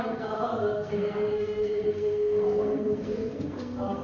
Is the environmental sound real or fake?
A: fake